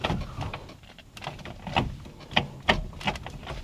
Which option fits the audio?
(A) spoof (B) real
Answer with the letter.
A